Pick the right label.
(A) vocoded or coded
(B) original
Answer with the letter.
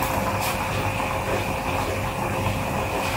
B